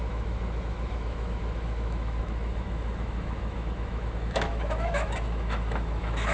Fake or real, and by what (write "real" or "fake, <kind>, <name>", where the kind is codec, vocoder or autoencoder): fake, autoencoder, DAC-VAE